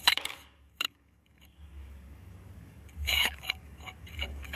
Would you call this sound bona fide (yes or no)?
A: no